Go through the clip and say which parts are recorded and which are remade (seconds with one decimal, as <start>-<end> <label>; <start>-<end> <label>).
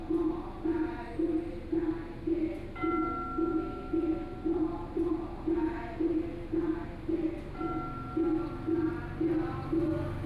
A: 0.0-3.5 recorded; 3.5-5.1 remade; 5.1-10.3 recorded